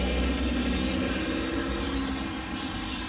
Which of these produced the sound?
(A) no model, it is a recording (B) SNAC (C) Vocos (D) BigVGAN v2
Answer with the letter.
A